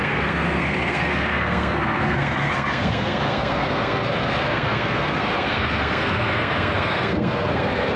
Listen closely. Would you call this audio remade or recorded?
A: remade